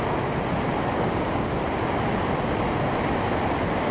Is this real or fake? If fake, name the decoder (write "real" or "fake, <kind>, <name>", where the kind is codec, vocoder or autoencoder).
real